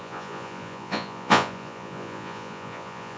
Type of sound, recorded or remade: remade